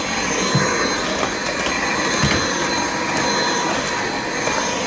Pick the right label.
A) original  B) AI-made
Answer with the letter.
A